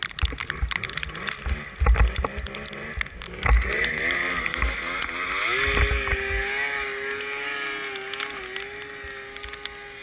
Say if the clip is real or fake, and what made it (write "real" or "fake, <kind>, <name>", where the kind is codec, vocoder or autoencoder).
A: real